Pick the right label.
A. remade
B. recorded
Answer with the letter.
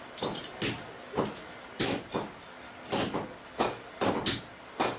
B